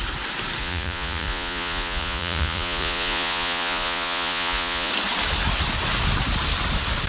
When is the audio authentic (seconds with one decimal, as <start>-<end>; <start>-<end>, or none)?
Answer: 0.0-0.6; 4.9-7.1